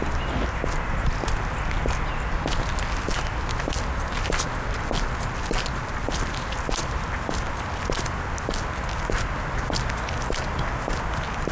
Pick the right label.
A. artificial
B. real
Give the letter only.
B